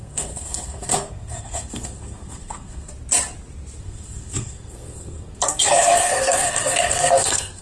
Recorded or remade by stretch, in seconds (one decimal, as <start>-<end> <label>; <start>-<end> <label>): 0.0-2.9 remade; 2.9-3.8 recorded; 3.8-7.6 remade